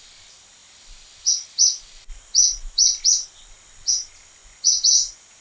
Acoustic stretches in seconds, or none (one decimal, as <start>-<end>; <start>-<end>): 0.0-4.4